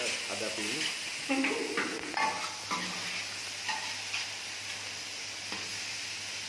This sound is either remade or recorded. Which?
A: recorded